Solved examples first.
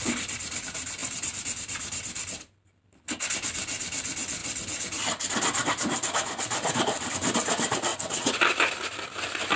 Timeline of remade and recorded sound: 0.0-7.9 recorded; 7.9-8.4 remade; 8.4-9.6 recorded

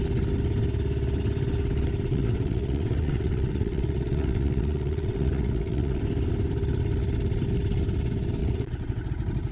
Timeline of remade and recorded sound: 0.0-2.1 recorded; 2.1-6.0 remade; 6.0-8.4 recorded; 8.4-9.1 remade; 9.1-9.5 recorded

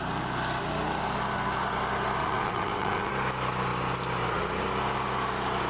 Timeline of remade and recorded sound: 0.0-2.2 recorded; 2.2-3.1 remade; 3.1-5.7 recorded

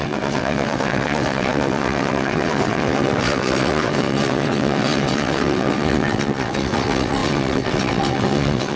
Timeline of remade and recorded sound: 0.0-8.8 remade

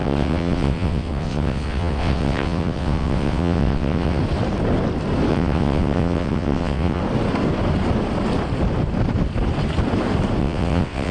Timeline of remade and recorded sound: 0.0-4.2 remade; 4.2-5.3 recorded; 5.3-7.0 remade; 7.0-10.4 recorded; 10.4-11.1 remade

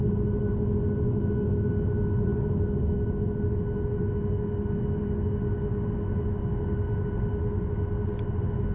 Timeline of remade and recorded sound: 0.0-8.7 recorded

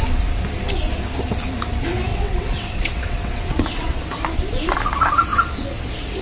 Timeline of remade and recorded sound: 0.0-2.1 recorded; 2.1-4.0 remade; 4.0-6.2 recorded

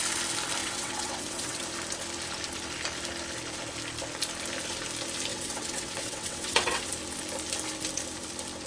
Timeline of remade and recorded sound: 0.0-0.6 recorded; 0.6-1.6 remade; 1.6-5.3 recorded; 5.3-6.9 remade; 6.9-8.7 recorded